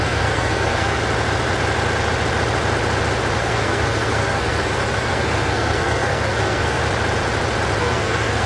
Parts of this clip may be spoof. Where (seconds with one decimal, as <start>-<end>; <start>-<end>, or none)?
0.0-1.0; 3.4-6.8; 7.8-8.5